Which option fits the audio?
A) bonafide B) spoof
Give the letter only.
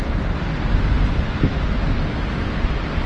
A